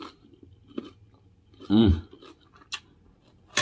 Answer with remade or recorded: recorded